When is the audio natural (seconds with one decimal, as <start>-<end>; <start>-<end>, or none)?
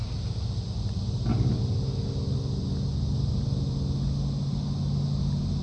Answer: 0.0-5.6